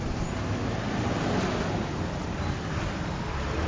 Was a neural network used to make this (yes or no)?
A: no